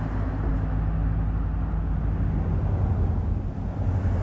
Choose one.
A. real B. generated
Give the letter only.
A